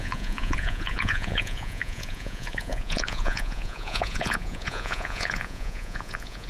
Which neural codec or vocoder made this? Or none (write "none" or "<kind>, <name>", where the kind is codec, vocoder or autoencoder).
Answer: vocoder, Vocos